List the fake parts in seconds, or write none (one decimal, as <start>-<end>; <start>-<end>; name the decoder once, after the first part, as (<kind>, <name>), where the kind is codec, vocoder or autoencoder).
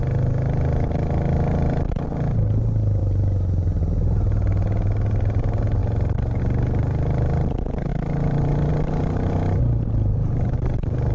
none